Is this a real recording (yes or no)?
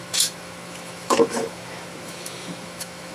no